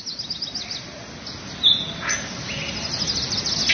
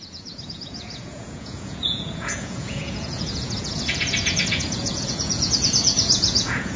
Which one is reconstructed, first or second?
second